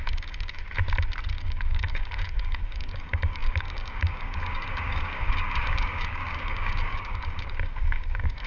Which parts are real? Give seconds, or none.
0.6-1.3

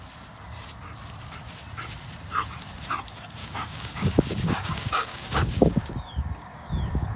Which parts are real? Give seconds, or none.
0.0-3.4